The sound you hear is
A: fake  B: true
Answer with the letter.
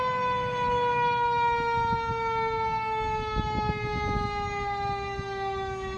B